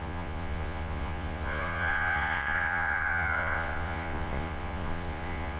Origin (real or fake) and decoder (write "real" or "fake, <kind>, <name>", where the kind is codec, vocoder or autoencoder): fake, vocoder, Vocos